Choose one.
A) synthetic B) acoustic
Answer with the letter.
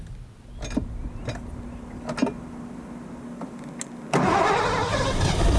B